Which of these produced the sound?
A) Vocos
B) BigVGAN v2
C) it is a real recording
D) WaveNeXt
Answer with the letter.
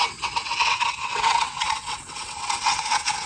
D